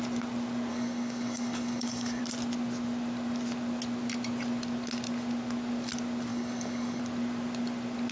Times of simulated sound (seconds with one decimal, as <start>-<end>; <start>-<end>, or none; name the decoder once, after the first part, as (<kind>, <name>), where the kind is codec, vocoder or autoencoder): 0.7-2.2 (codec, DAC); 6.3-7.0